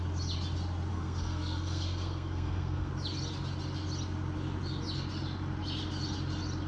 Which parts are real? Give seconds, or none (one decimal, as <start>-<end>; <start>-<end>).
0.0-0.9; 2.9-6.7